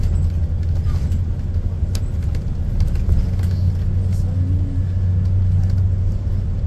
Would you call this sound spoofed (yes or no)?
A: no